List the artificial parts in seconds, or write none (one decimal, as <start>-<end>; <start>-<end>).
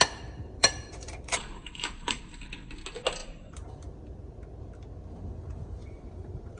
0.6-2.2; 5.8-6.6